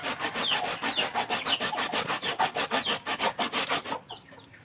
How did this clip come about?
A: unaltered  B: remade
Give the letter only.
A